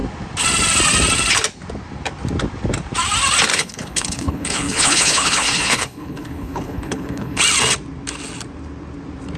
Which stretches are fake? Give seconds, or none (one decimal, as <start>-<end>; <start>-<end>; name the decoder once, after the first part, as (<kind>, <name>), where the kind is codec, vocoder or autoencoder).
3.5-7.4 (codec, HILCodec)